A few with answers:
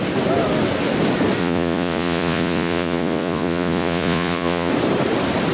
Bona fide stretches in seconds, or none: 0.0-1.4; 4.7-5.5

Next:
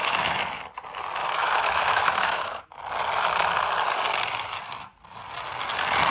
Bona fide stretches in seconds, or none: 0.6-1.2; 2.8-6.1

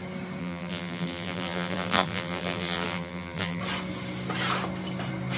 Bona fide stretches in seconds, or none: 0.0-0.4; 3.6-5.4